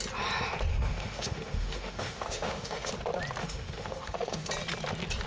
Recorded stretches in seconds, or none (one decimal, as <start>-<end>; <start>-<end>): 0.0-0.7; 2.9-3.4; 4.5-5.3